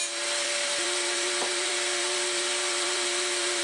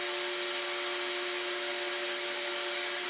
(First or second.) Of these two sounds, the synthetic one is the first